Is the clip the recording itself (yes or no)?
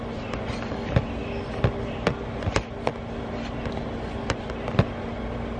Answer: yes